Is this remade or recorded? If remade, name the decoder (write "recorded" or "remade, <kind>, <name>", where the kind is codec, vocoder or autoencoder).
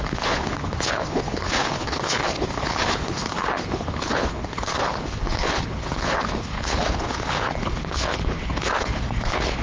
remade, codec, HILCodec